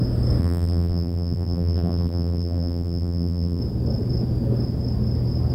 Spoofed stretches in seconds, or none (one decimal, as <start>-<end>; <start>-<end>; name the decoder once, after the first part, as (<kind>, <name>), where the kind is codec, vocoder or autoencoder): 0.4-3.6 (vocoder, BigVGAN v2)